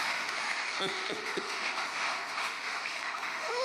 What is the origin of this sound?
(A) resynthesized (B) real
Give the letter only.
A